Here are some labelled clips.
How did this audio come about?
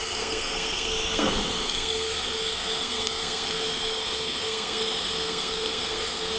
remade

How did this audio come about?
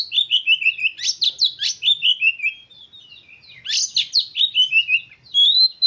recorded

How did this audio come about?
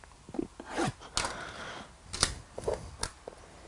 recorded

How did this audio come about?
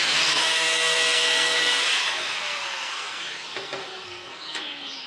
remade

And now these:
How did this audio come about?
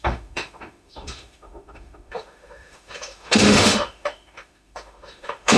remade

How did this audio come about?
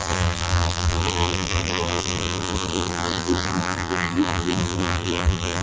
remade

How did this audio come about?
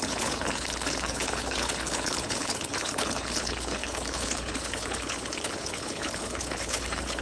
remade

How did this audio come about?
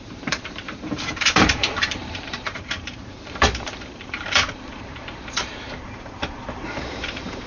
remade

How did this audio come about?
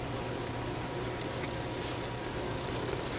recorded